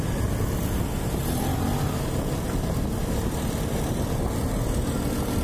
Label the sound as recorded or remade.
recorded